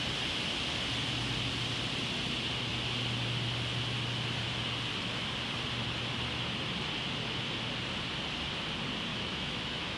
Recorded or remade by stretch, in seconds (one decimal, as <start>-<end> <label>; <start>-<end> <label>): 0.0-9.1 recorded; 9.1-10.0 remade